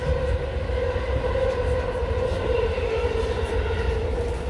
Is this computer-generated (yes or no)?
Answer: no